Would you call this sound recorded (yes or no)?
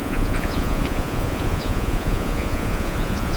no